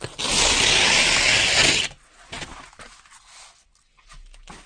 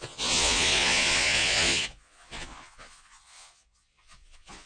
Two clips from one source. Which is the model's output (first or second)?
second